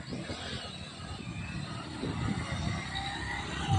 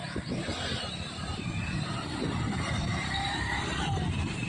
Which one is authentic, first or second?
first